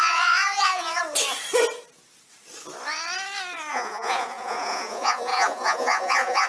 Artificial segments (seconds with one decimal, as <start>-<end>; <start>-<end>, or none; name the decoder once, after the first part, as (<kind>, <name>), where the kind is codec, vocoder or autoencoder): 0.0-1.0 (vocoder, Vocos); 3.7-6.5